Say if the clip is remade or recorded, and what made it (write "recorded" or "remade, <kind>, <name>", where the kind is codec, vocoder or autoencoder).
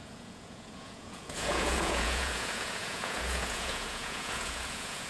remade, vocoder, Vocos